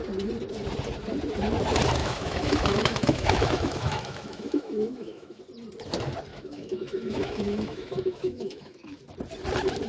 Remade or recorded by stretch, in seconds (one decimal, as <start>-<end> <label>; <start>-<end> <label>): 0.0-2.0 recorded; 2.0-5.4 remade; 5.4-6.3 recorded; 6.3-9.0 remade; 9.0-9.9 recorded